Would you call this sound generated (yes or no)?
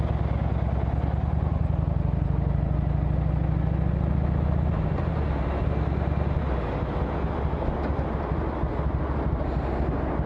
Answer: no